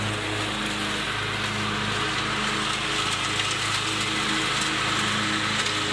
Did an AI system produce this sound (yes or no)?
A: no